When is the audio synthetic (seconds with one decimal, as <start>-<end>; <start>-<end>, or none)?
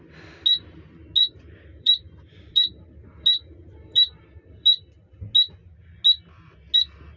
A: 1.7-5.2